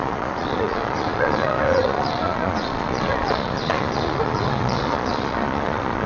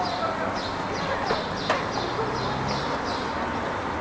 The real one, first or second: second